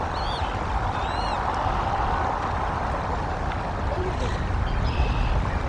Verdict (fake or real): real